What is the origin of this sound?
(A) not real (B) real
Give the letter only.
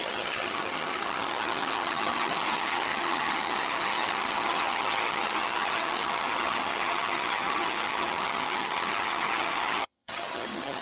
A